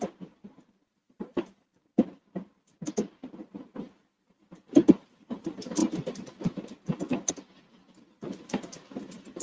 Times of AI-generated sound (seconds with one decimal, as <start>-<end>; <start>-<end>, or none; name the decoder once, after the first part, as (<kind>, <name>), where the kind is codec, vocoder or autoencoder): 0.0-2.7 (vocoder, BigVGAN v2); 4.9-5.8; 8.4-9.4